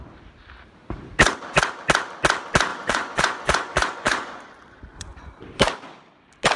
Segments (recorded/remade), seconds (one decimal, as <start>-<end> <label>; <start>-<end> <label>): 0.0-2.7 recorded; 2.7-5.3 remade; 5.3-6.6 recorded